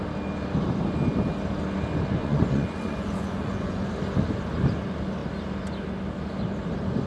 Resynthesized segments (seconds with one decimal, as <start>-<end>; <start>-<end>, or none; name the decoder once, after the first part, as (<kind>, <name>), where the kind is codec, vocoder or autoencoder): 2.2-3.9 (vocoder, Vocos)